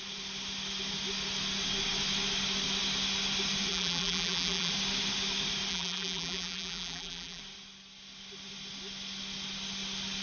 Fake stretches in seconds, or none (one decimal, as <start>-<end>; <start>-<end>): 3.7-4.7; 5.7-7.4